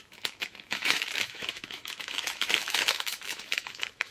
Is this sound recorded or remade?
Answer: remade